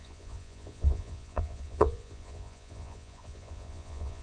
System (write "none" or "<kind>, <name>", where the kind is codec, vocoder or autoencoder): vocoder, Vocos